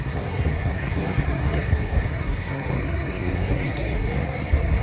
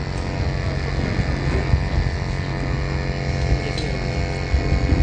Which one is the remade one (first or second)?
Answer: first